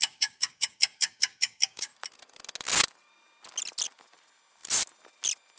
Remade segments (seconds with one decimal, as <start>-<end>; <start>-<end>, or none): 0.0-1.9